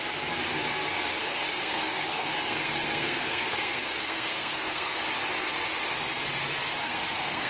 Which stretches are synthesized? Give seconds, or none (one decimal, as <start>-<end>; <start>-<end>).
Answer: 1.2-5.0; 6.8-7.5